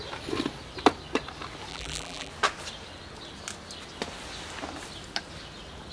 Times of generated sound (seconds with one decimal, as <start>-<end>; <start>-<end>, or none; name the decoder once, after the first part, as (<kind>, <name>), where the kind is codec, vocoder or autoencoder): 1.7-2.3 (vocoder, BigVGAN v2)